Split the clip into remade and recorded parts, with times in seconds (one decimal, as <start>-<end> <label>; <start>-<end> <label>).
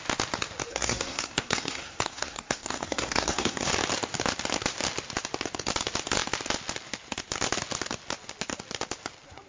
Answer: 0.0-0.7 recorded; 0.7-3.7 remade; 3.7-9.5 recorded